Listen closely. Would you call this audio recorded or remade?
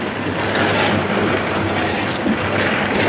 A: recorded